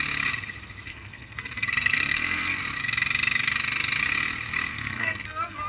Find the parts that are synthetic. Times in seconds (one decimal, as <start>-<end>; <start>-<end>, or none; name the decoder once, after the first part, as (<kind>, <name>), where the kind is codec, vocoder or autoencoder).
0.9-2.6 (codec, SNAC); 4.7-5.7